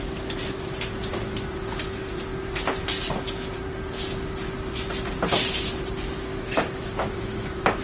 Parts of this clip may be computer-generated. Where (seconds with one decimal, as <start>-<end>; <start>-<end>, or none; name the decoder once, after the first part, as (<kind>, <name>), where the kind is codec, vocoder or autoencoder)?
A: 6.3-7.8 (autoencoder, DAC-VAE)